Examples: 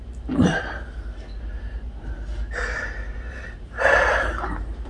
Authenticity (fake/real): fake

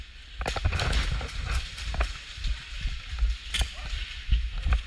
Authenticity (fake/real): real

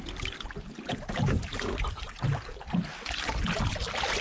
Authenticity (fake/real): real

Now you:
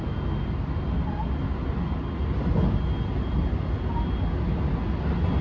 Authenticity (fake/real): real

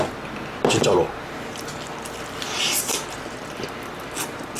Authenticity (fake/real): real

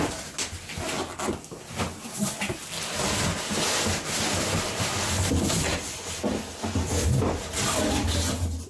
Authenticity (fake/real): real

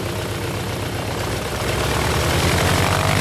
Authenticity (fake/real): real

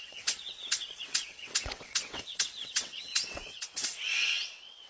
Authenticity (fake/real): fake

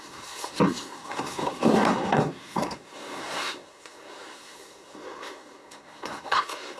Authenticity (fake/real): fake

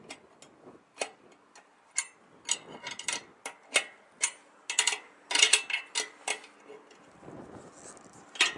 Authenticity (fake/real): real